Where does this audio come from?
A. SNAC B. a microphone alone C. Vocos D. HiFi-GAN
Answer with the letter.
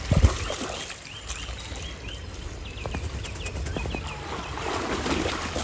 B